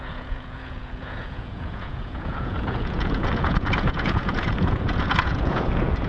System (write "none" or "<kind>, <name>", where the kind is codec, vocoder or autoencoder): vocoder, Vocos